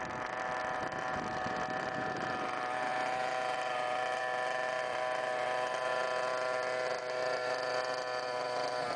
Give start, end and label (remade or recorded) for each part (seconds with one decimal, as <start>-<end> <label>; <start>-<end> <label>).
0.0-9.0 recorded